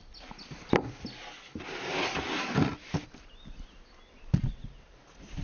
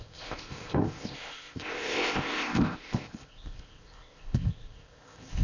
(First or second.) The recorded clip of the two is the first